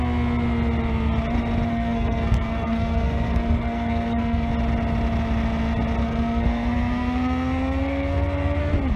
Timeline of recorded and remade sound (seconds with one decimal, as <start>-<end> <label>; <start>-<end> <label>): 0.0-1.7 recorded; 1.7-4.5 remade; 4.5-6.0 recorded; 6.0-8.6 remade; 8.6-9.0 recorded